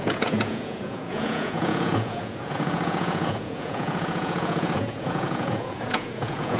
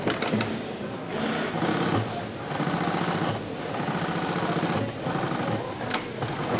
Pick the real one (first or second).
second